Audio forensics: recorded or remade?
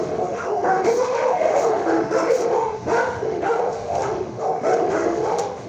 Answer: remade